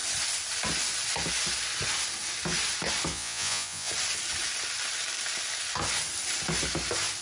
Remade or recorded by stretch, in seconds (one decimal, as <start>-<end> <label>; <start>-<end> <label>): 0.0-3.1 recorded; 3.1-3.9 remade; 3.9-7.2 recorded